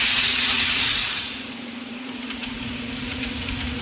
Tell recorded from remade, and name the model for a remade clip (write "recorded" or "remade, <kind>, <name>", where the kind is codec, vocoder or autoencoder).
remade, vocoder, Vocos